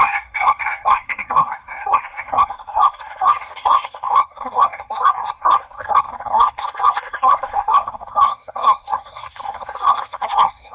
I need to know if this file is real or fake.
fake